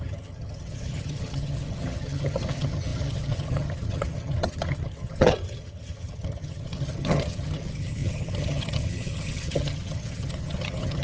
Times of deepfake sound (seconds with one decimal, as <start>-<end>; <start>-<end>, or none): 0.0-11.0